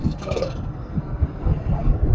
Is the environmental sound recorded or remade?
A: remade